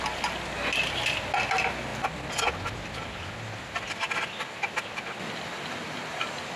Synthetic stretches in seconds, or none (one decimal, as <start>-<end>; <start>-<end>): none